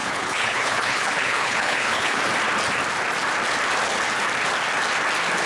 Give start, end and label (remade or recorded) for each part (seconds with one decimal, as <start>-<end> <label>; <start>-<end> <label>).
0.0-2.2 remade; 2.2-5.5 recorded